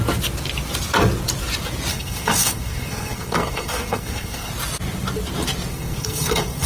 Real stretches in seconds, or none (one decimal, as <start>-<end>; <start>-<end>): 0.0-1.9; 4.5-5.7